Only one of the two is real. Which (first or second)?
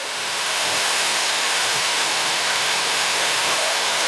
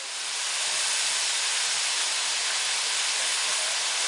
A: second